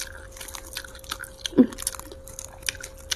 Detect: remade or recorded recorded